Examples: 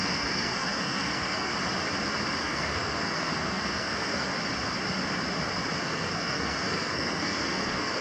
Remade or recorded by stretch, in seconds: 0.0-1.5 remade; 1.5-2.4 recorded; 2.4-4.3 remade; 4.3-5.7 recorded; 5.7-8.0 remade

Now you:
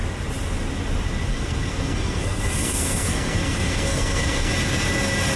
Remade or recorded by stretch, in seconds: 0.0-1.3 recorded; 1.3-4.5 remade; 4.5-5.4 recorded